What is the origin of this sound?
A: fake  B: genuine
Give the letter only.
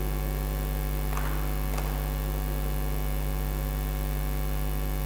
B